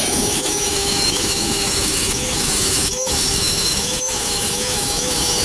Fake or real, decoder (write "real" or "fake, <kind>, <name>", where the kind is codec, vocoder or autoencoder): fake, autoencoder, DAC-VAE